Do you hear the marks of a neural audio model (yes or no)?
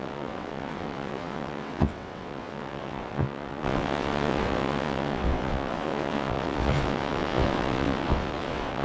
yes